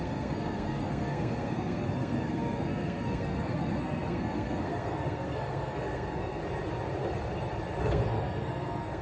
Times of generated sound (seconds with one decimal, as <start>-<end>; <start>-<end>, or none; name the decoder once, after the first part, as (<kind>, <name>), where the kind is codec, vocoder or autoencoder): 0.0-6.4 (codec, SNAC); 7.8-9.0